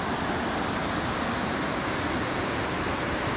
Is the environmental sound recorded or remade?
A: recorded